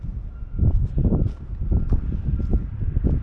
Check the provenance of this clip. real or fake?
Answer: real